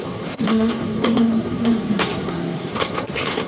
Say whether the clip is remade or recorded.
remade